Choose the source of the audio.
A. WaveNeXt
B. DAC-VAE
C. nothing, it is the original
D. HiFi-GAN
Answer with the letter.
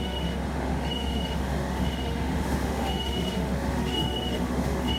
B